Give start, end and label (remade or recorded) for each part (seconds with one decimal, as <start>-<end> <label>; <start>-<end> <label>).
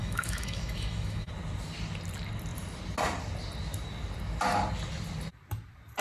0.0-1.3 remade; 1.3-6.0 recorded